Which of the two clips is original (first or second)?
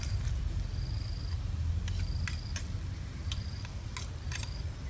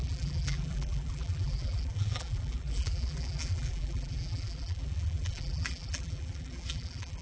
first